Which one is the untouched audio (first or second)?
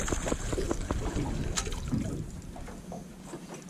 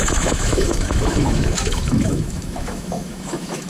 first